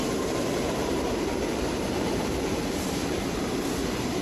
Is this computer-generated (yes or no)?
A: yes